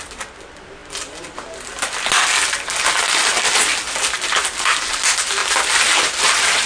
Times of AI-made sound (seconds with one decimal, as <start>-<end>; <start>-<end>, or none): none